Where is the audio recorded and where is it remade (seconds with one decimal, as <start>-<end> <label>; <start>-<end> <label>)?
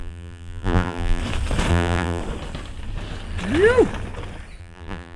0.0-1.2 remade; 1.2-1.7 recorded; 1.7-2.2 remade; 2.2-4.6 recorded; 4.6-5.2 remade